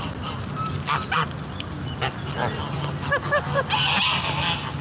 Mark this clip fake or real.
real